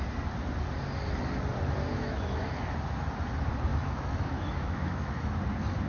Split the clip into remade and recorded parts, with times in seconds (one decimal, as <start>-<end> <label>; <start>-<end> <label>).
0.0-1.9 recorded; 1.9-2.5 remade; 2.5-3.7 recorded; 3.7-5.4 remade; 5.4-5.9 recorded